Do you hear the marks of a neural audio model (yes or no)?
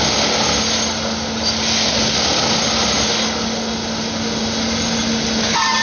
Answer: no